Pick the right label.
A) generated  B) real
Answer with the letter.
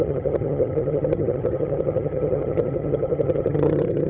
A